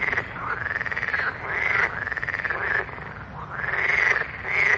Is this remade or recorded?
recorded